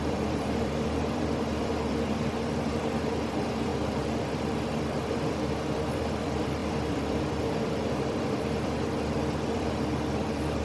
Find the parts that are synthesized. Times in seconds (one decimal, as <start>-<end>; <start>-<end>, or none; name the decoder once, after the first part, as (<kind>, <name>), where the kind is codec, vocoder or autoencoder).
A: 0.0-10.6 (vocoder, BigVGAN v2)